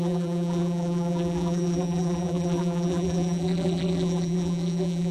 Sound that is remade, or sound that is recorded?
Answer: remade